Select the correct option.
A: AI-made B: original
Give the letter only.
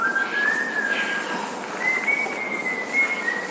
B